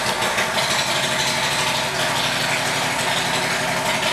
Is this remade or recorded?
recorded